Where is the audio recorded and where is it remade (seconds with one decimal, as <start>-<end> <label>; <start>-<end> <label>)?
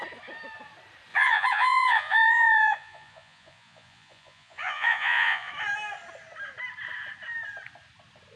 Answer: 0.0-1.1 recorded; 1.1-5.5 remade; 5.5-8.4 recorded